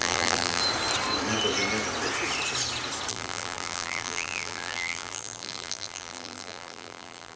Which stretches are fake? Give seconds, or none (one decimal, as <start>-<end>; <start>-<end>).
0.0-0.6; 3.1-7.4